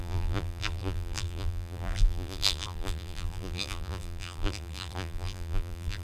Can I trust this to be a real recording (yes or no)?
no